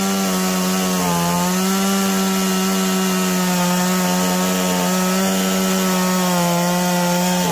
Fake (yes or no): no